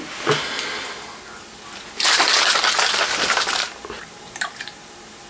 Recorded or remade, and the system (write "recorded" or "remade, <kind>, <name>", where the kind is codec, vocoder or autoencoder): recorded